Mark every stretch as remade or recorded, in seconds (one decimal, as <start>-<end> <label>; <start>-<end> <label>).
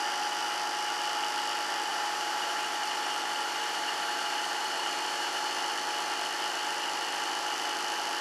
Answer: 0.0-1.9 recorded; 1.9-5.5 remade; 5.5-8.2 recorded